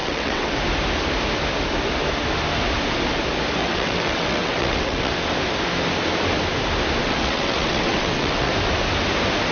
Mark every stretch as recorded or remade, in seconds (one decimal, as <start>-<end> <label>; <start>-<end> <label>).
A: 0.0-0.6 remade; 0.6-3.6 recorded; 3.6-5.1 remade; 5.1-7.0 recorded; 7.0-8.5 remade; 8.5-9.5 recorded